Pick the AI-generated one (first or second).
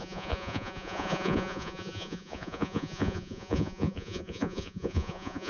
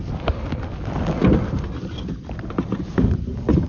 first